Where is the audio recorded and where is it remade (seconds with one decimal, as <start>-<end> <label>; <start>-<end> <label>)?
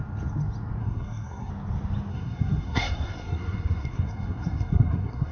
0.0-0.8 recorded; 0.8-1.5 remade; 1.5-2.1 recorded; 2.1-5.3 remade